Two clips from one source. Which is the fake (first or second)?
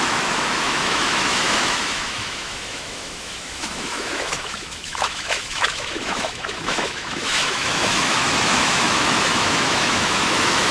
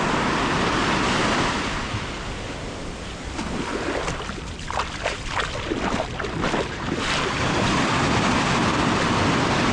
first